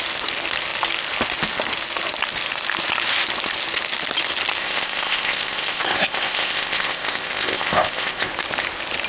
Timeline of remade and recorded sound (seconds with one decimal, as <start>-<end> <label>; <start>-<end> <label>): 0.0-4.6 recorded; 4.6-8.3 remade; 8.3-9.1 recorded